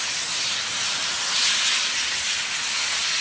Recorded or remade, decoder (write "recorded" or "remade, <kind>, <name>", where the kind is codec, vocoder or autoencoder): recorded